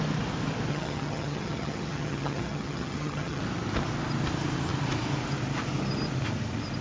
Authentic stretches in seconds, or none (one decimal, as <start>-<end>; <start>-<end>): 0.0-0.7; 3.4-6.8